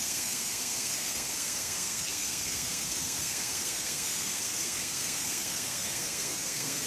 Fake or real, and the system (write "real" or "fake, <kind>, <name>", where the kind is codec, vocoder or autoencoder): fake, codec, SNAC